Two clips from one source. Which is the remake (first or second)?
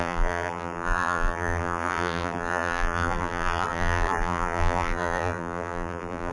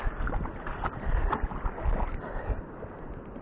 first